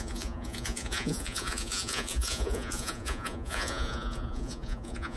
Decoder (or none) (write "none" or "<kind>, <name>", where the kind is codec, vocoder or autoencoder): vocoder, Vocos